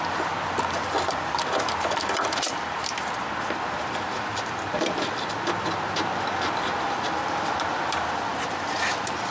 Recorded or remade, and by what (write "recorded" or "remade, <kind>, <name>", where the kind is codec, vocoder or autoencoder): remade, vocoder, BigVGAN v2